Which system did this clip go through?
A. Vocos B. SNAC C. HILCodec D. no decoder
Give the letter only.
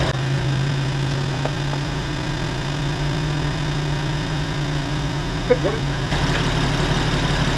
D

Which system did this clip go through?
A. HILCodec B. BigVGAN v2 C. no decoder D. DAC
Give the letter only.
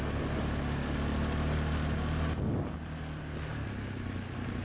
C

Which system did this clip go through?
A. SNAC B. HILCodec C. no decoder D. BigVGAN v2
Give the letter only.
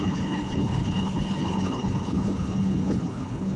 B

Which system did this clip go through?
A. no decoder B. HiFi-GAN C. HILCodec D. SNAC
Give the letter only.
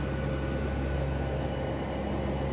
A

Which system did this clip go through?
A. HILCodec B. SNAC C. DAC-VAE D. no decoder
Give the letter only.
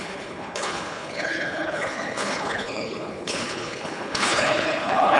A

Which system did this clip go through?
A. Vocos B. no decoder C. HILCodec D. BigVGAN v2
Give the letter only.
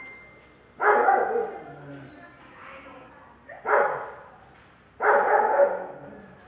B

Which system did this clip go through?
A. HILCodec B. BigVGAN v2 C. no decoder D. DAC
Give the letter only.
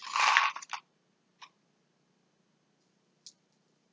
C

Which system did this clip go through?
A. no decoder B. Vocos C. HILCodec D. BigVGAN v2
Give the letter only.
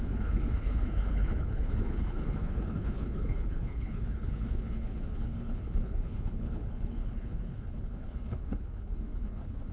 C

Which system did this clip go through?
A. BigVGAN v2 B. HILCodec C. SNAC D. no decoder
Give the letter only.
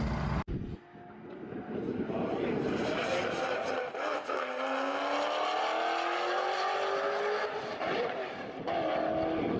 D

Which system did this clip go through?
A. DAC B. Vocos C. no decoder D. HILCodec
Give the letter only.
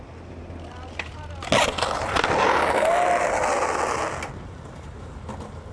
C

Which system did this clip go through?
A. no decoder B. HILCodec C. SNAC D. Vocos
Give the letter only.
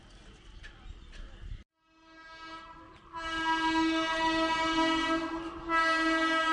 A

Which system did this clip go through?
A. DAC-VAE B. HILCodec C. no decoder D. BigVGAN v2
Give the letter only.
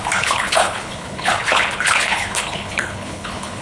B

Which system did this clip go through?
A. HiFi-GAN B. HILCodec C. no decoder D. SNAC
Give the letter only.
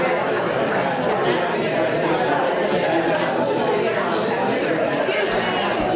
C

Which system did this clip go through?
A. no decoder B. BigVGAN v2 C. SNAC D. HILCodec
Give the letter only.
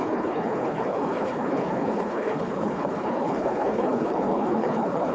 D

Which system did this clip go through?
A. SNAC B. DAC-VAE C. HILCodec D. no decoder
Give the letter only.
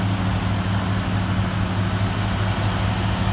D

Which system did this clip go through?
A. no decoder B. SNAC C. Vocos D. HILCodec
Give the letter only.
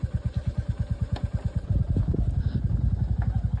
A